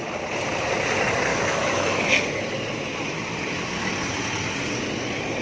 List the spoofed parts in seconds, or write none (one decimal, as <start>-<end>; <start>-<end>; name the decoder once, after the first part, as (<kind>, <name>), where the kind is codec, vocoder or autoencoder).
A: 1.3-2.1 (autoencoder, DAC-VAE)